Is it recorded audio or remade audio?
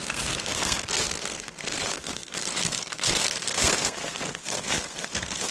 remade